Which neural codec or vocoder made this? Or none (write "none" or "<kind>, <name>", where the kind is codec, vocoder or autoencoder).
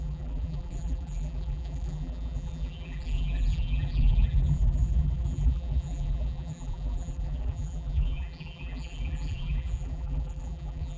vocoder, BigVGAN v2